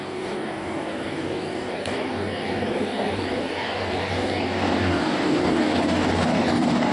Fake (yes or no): yes